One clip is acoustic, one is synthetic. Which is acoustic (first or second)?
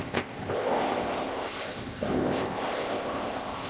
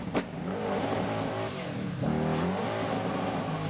second